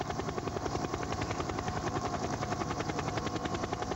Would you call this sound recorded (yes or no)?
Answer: no